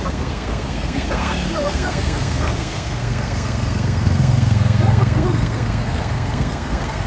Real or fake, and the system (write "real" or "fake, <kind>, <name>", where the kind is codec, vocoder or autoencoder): fake, codec, SNAC